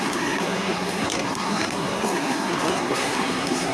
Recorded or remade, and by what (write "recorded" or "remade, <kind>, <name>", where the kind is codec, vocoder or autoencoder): remade, codec, SNAC